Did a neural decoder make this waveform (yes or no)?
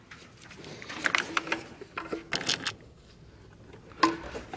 no